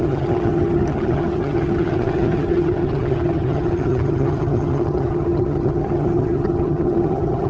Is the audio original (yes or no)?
no